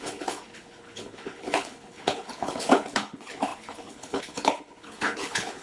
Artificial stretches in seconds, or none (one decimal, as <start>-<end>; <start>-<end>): 0.0-5.6